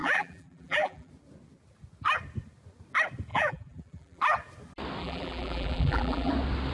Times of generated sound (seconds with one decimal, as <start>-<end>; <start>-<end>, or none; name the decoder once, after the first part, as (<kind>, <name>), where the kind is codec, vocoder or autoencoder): 0.0-1.1 (vocoder, BigVGAN v2); 3.3-4.2; 5.0-6.3